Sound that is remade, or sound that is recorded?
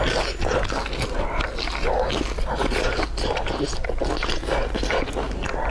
recorded